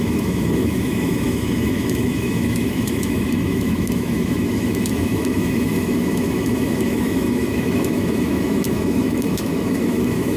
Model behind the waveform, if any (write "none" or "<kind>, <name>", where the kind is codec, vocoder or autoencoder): autoencoder, DAC-VAE